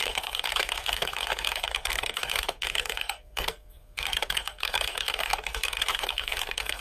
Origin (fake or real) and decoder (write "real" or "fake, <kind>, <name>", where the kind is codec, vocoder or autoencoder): fake, codec, SNAC